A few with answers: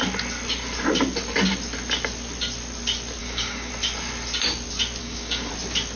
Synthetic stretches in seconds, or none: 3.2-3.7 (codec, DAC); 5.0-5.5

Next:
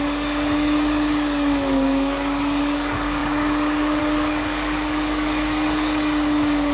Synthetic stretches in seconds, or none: 0.0-6.7 (codec, DAC)

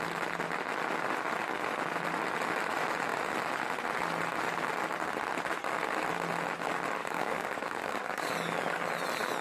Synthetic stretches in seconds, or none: 7.0-8.3 (codec, DAC)

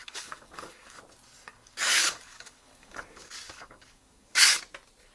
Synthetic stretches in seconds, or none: 0.0-1.0 (codec, DAC); 1.5-4.6